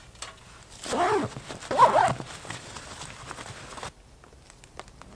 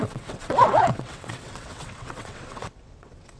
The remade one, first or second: second